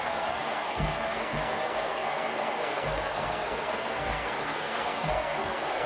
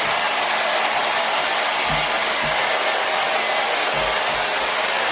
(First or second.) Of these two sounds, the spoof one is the first